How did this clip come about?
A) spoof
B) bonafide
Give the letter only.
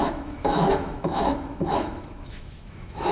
A